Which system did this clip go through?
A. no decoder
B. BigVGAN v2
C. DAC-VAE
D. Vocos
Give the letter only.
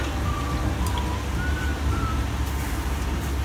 A